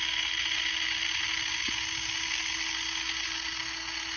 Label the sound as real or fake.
real